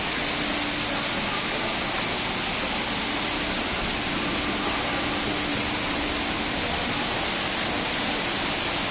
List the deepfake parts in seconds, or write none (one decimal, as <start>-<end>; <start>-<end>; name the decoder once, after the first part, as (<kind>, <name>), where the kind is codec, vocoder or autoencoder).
5.5-7.1 (vocoder, BigVGAN v2)

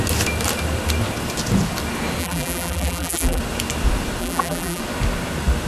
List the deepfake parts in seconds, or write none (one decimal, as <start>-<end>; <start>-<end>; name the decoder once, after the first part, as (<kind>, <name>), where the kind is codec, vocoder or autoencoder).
2.2-3.4 (vocoder, BigVGAN v2); 4.2-4.8